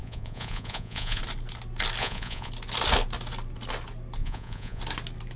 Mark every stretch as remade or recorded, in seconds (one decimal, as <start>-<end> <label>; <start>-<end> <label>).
0.0-1.2 remade; 1.2-2.0 recorded; 2.0-2.5 remade; 2.5-4.2 recorded; 4.2-4.8 remade; 4.8-5.4 recorded